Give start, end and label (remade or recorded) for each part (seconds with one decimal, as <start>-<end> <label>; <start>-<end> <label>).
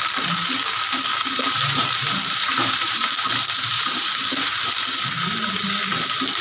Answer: 0.0-1.1 recorded; 1.1-4.7 remade; 4.7-6.4 recorded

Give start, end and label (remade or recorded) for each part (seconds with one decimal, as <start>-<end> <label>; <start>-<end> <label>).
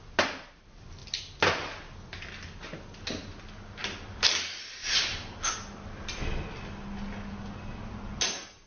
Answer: 0.0-8.7 recorded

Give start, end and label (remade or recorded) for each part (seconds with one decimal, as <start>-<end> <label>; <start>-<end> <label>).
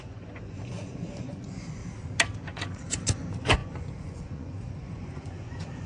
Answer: 0.0-1.8 remade; 1.8-2.4 recorded; 2.4-5.9 remade